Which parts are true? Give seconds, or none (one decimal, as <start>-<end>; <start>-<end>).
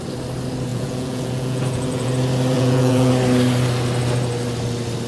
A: 0.0-0.7; 2.1-2.5; 3.1-5.1